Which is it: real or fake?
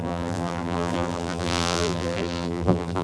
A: fake